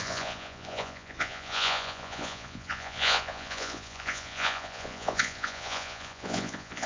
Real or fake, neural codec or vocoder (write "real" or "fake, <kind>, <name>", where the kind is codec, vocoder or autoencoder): fake, vocoder, Vocos